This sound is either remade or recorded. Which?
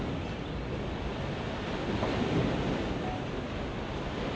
recorded